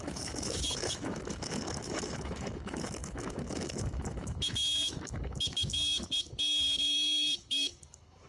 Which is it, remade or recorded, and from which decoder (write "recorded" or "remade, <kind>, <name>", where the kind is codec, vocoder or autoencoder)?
remade, autoencoder, DAC-VAE